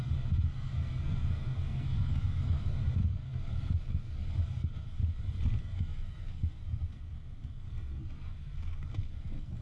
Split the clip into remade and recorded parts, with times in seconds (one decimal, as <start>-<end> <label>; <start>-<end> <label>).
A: 0.0-5.0 remade; 5.0-5.6 recorded; 5.6-9.6 remade